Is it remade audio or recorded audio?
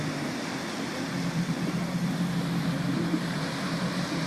recorded